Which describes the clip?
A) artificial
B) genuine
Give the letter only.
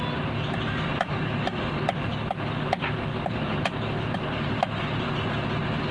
B